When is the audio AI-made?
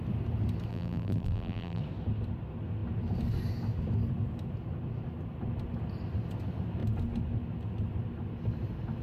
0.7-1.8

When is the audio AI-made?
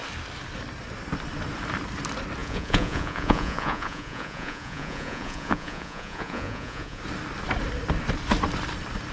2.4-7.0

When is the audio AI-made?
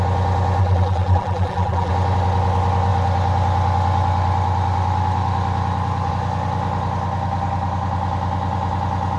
0.6-1.9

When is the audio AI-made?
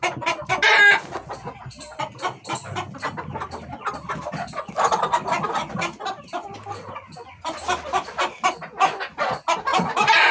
9.7-10.3